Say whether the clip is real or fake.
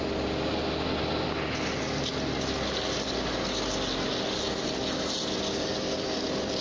real